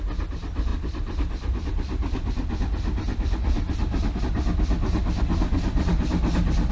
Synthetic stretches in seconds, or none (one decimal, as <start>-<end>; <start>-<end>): none